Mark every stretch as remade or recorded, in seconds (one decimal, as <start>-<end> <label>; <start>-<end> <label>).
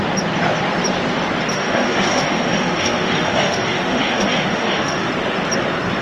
0.0-1.5 recorded; 1.5-5.1 remade; 5.1-6.0 recorded